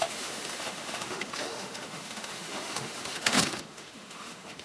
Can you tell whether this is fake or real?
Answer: fake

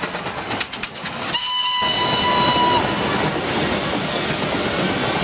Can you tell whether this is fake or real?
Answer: real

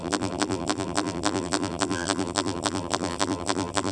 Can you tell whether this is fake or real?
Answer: fake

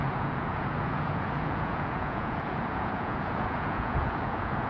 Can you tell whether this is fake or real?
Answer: fake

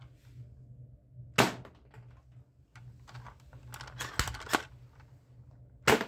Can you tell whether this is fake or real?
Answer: real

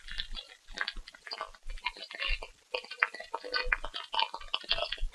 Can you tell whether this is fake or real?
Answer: real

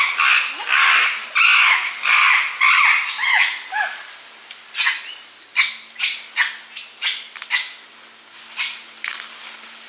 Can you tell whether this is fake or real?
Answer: real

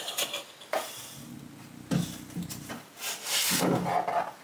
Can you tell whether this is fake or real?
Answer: real